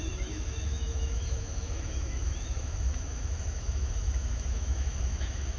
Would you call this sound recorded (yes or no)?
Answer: no